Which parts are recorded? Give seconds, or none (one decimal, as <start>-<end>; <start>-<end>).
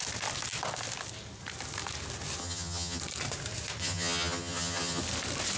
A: 0.0-2.4; 3.0-3.8; 5.0-5.6